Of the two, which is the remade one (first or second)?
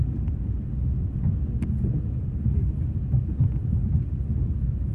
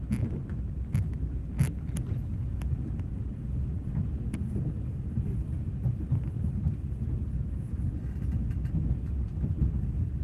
second